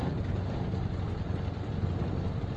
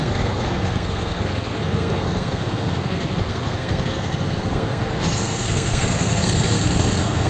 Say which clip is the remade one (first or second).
second